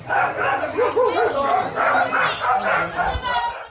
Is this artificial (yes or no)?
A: no